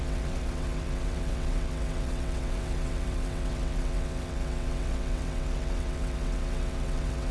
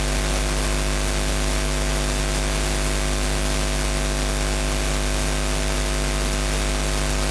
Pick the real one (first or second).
second